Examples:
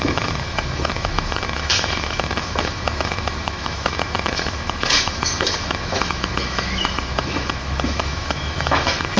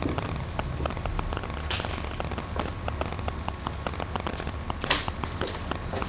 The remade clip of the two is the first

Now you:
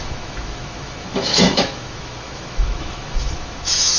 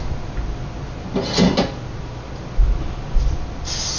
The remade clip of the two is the first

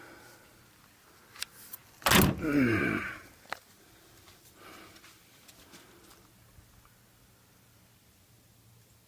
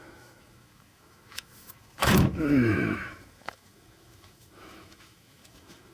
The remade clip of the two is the second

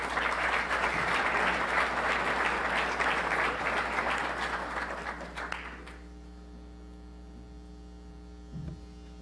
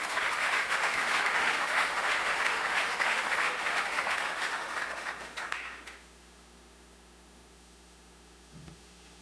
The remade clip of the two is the second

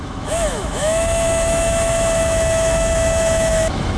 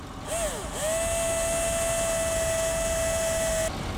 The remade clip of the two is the first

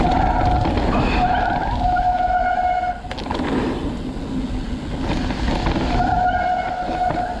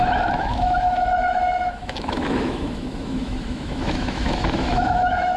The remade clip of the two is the second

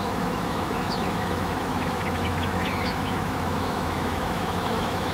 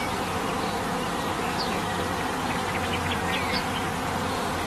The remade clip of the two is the first